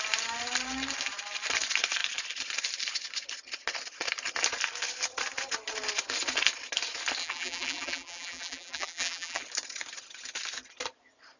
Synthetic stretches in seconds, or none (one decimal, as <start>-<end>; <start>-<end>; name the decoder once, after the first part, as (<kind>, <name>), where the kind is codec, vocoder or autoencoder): 7.2-9.4 (vocoder, BigVGAN v2)